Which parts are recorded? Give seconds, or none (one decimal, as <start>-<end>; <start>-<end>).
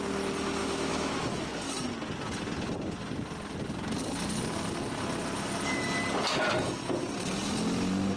0.0-0.6; 1.4-8.2